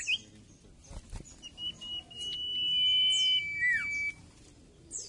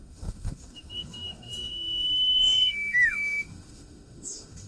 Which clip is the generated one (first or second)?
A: second